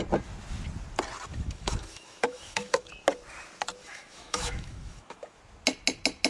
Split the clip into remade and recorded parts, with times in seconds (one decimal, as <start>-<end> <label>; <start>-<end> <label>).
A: 0.0-1.3 recorded; 1.3-2.9 remade; 2.9-3.8 recorded; 3.8-5.4 remade; 5.4-6.3 recorded